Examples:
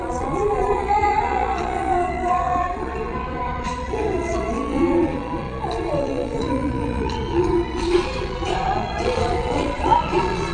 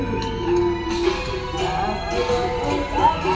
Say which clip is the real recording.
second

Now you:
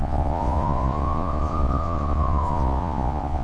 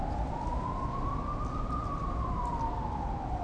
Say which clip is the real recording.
second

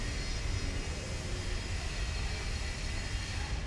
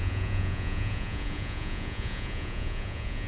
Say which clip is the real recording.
first